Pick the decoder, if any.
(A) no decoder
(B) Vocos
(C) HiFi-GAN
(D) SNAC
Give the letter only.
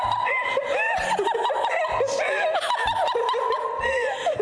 A